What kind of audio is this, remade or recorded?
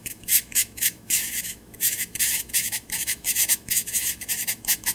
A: remade